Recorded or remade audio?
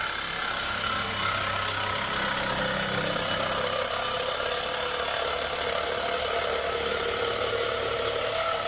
recorded